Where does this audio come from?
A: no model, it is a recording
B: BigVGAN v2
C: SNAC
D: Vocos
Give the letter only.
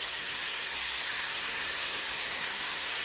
C